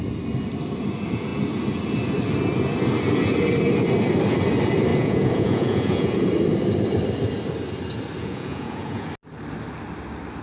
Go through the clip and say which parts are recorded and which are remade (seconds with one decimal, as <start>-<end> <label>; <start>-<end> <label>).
0.0-4.9 recorded; 4.9-6.3 remade; 6.3-8.2 recorded; 8.2-9.1 remade; 9.1-10.4 recorded